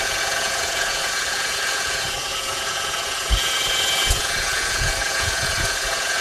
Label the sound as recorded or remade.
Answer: remade